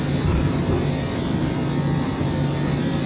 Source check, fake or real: real